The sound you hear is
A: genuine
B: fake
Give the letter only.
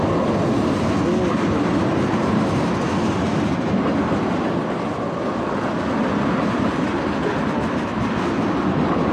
A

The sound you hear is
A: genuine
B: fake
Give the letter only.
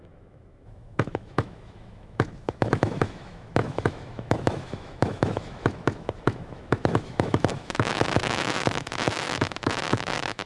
B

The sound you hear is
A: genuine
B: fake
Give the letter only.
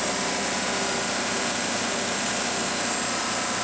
A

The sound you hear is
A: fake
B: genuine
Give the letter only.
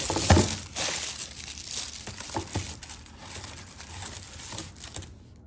B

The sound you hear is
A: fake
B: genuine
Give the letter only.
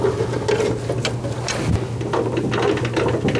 B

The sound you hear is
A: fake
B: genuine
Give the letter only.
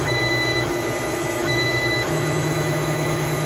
A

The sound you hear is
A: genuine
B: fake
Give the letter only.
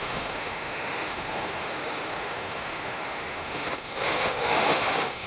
B